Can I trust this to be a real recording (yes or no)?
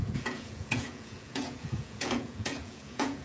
no